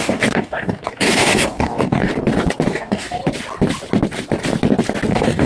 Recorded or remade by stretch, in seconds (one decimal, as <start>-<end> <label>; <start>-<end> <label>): 0.0-2.1 remade; 2.1-2.7 recorded; 2.7-3.2 remade; 3.2-5.1 recorded; 5.1-5.5 remade